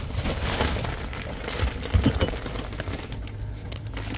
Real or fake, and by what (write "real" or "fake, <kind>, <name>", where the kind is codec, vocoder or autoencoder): fake, vocoder, BigVGAN v2